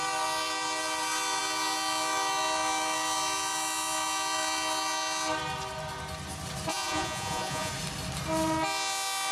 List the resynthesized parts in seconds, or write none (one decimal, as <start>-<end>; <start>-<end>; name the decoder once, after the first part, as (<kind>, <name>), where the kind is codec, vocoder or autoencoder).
6.7-7.7 (vocoder, Vocos)